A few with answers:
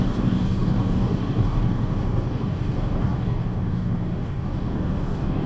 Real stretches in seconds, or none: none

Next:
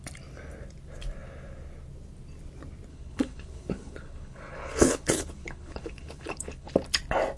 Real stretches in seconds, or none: 0.0-2.9; 6.7-7.4

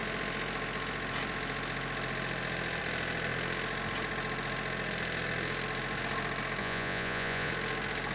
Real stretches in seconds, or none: 0.0-6.6; 7.5-8.1